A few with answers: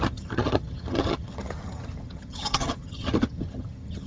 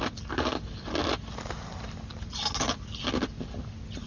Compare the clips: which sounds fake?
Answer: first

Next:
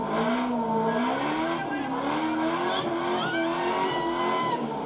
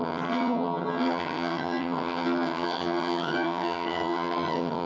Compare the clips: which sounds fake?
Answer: second